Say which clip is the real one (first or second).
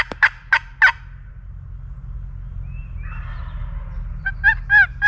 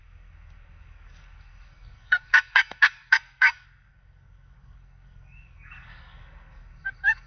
first